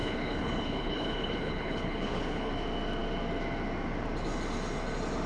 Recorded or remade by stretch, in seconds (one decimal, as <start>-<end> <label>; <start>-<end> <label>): 0.0-2.5 remade; 2.5-5.3 recorded